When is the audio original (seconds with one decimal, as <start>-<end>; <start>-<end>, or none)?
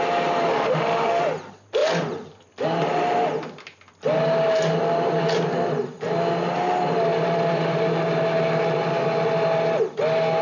0.0-0.5; 1.2-10.4